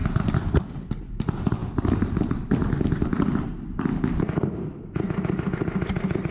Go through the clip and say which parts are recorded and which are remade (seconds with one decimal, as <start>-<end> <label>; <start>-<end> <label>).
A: 0.0-1.2 remade; 1.2-6.3 recorded